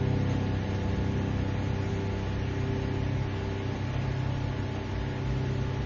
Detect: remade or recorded recorded